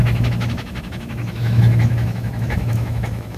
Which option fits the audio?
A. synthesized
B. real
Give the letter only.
A